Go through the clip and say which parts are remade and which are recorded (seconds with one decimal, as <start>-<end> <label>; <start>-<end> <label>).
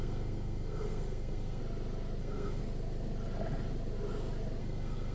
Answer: 0.0-1.6 remade; 1.6-2.2 recorded; 2.2-2.6 remade; 2.6-4.6 recorded; 4.6-5.1 remade